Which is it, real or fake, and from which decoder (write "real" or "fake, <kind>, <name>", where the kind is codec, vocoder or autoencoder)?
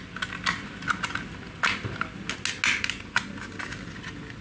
real